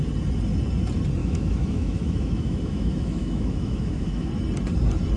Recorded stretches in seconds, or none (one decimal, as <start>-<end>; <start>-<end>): 0.0-1.2; 4.3-5.2